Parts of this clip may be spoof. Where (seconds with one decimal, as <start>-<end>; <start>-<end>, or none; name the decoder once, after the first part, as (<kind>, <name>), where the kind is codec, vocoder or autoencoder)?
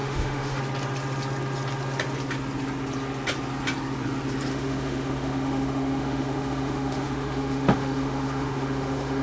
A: 0.0-0.6 (autoencoder, DAC-VAE); 4.5-9.2